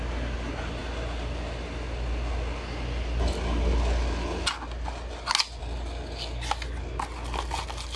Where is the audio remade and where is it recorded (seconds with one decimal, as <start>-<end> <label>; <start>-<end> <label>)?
0.0-8.0 recorded